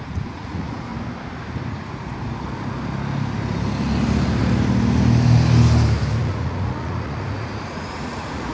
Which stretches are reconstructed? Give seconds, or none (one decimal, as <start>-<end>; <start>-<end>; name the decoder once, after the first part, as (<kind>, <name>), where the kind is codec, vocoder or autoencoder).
0.0-0.9 (vocoder, Vocos); 1.7-2.1; 6.2-8.5